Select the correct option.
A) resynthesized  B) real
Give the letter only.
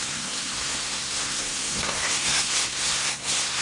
A